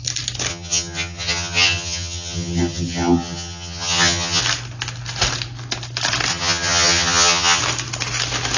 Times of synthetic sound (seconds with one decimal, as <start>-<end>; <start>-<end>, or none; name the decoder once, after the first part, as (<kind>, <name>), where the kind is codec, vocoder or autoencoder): 0.5-4.4 (vocoder, HiFi-GAN); 6.3-7.6